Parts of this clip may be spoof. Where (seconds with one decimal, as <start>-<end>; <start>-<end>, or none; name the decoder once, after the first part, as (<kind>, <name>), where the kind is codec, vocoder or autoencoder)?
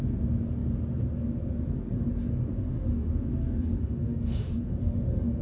2.2-5.4 (autoencoder, DAC-VAE)